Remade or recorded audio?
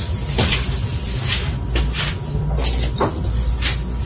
recorded